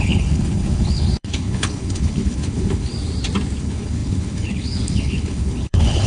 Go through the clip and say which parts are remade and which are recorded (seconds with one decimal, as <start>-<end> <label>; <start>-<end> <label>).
0.0-2.9 remade; 2.9-3.6 recorded; 3.6-6.1 remade